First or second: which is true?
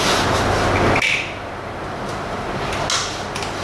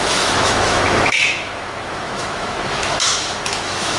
first